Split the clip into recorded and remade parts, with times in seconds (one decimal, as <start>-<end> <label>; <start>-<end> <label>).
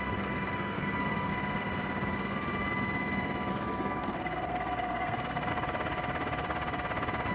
0.0-1.3 remade; 1.3-3.5 recorded; 3.5-5.5 remade; 5.5-7.3 recorded